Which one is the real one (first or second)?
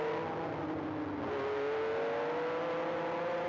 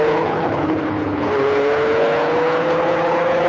first